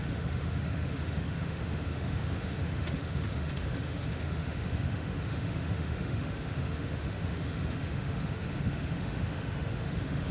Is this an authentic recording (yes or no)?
no